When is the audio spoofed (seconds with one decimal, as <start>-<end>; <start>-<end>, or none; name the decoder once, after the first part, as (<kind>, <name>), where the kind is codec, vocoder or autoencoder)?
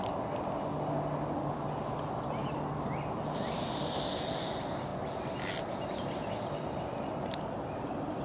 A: none